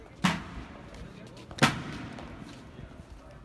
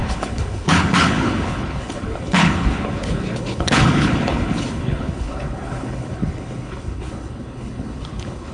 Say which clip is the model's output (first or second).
second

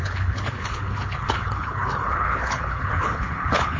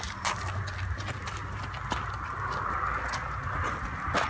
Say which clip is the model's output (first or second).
first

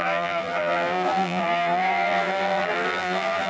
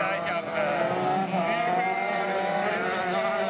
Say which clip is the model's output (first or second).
first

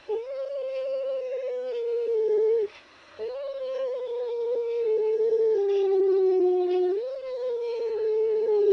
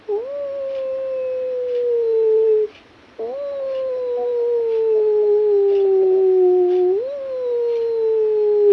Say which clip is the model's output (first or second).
first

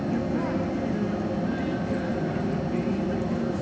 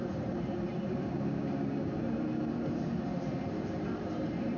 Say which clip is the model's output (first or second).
second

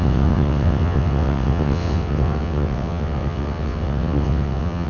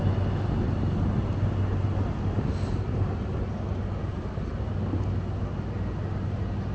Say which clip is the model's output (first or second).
first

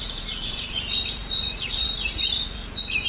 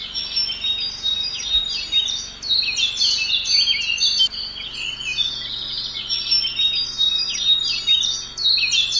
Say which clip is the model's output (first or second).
first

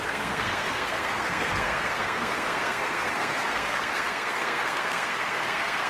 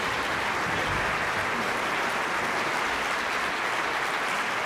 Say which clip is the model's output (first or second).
first